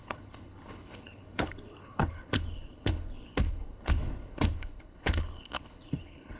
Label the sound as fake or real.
fake